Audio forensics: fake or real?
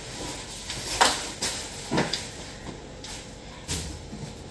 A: real